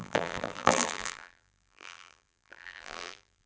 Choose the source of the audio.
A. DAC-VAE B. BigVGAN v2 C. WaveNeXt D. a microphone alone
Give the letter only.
B